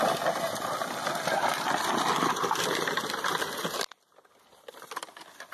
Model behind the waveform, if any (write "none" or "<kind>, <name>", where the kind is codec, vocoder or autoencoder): none